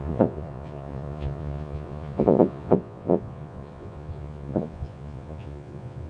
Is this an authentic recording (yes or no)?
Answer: no